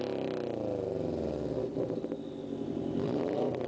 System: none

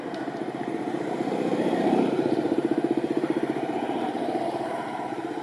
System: vocoder, BigVGAN v2